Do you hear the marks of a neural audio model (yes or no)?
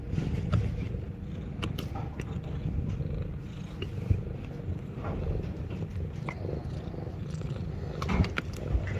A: no